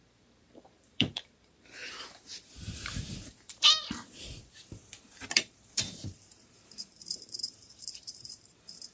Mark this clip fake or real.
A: fake